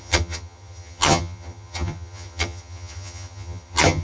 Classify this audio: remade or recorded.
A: remade